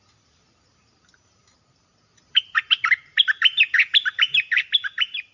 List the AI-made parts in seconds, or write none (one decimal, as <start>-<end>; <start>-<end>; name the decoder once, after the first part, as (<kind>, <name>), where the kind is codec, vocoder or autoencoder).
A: 0.0-3.5 (vocoder, BigVGAN v2); 4.1-5.3